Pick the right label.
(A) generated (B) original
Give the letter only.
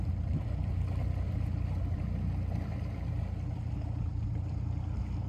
B